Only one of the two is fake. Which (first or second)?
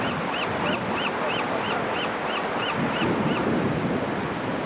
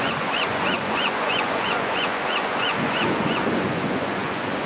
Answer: second